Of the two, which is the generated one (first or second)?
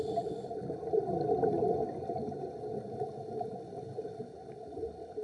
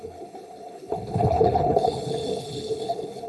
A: second